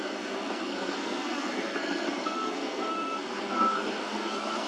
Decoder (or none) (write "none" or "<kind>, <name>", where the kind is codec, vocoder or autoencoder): codec, SNAC